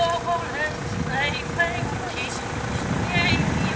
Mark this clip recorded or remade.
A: recorded